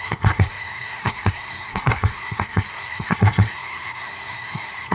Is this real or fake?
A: fake